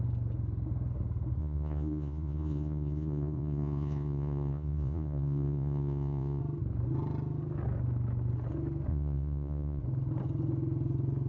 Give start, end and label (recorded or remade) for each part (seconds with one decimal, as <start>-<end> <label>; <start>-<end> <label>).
0.0-1.4 recorded; 1.4-6.4 remade; 6.4-8.9 recorded; 8.9-9.8 remade; 9.8-11.3 recorded